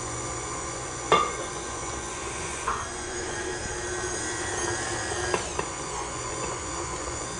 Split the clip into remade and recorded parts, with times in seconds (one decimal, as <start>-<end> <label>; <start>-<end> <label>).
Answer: 0.0-3.5 remade; 3.5-5.6 recorded; 5.6-7.4 remade